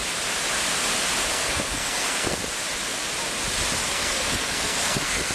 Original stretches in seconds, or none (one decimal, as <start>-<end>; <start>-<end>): 0.0-1.3; 2.4-3.9